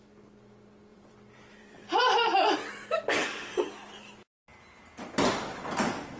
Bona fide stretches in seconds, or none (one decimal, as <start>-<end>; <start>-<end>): 0.0-0.9; 3.6-6.2